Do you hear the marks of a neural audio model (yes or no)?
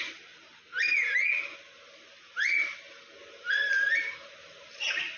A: yes